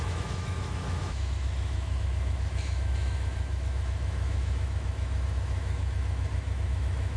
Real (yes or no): no